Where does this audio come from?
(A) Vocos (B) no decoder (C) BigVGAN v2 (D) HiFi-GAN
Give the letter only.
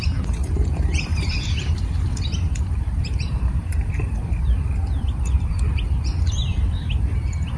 C